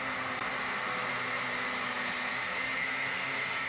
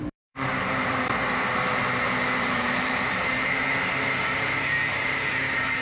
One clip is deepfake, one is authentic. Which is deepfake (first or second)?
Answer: second